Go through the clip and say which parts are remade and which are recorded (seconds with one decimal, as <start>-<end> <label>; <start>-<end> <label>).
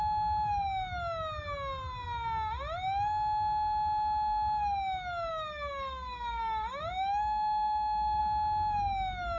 0.0-5.3 recorded; 5.3-8.2 remade; 8.2-9.4 recorded